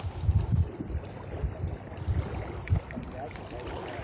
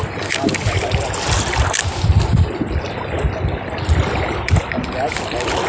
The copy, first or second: first